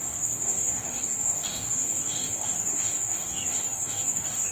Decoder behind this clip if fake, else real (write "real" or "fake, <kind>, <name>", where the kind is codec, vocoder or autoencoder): fake, codec, DAC